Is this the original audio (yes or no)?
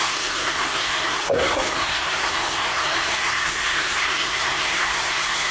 no